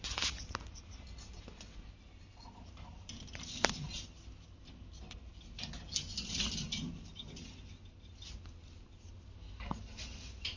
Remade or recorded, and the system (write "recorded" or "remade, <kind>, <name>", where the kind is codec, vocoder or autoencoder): recorded